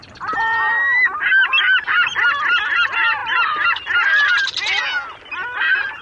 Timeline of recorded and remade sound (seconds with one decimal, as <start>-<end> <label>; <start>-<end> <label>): 0.0-6.0 recorded